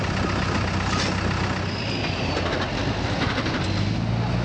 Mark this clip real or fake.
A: real